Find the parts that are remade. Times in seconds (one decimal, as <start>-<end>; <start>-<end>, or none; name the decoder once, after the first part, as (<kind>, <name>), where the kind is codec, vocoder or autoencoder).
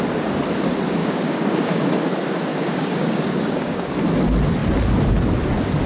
1.0-1.9 (codec, DAC); 2.5-3.9